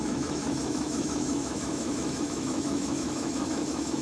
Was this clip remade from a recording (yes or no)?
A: yes